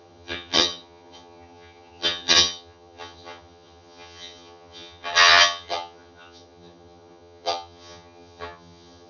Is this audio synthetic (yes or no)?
yes